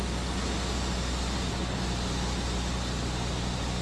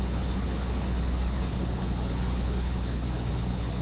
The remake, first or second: second